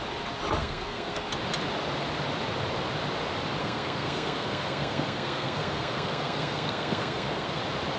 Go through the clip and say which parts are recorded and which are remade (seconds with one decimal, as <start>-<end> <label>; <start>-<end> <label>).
0.0-0.6 recorded; 0.6-1.3 remade; 1.3-3.6 recorded; 3.6-7.6 remade; 7.6-8.0 recorded